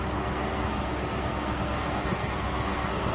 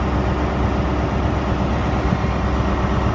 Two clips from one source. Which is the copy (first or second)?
first